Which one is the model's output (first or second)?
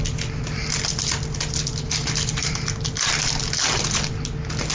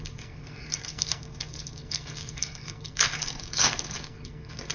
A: second